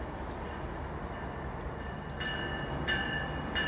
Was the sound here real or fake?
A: real